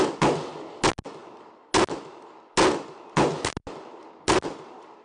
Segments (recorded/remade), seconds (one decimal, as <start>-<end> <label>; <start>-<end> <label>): 0.0-5.0 recorded